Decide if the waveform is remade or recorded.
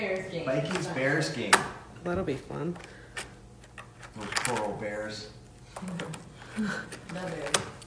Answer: recorded